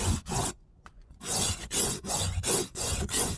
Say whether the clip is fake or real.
fake